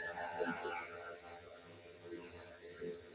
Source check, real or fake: fake